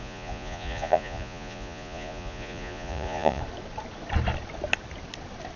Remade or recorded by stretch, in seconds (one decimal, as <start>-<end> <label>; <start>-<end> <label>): 0.0-3.4 remade; 3.4-5.6 recorded